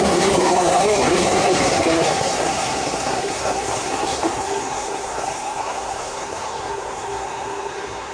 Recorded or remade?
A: remade